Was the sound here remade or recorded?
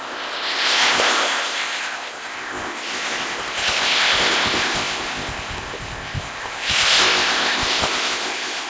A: remade